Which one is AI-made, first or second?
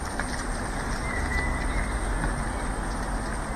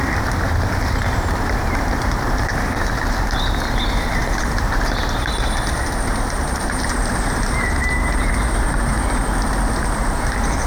second